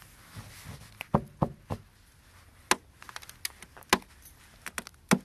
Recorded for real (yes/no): yes